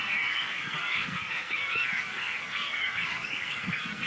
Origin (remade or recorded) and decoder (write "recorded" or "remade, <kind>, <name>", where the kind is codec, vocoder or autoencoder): remade, codec, SNAC